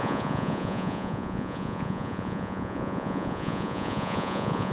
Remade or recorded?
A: remade